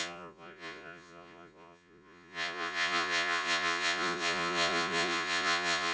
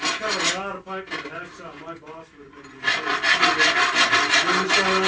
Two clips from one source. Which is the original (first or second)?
second